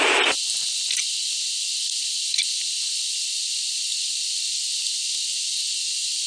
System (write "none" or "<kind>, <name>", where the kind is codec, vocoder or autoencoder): none